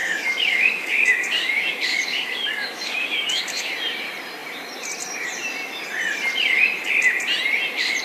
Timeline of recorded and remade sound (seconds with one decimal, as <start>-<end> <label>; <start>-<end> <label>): 0.0-3.7 remade; 3.7-8.0 recorded